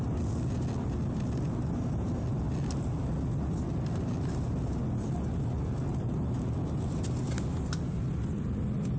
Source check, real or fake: real